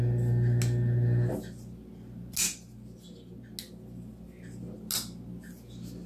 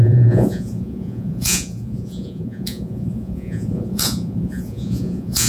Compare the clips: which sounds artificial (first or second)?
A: second